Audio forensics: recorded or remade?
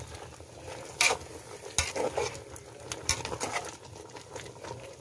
recorded